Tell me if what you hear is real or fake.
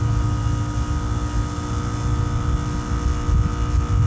real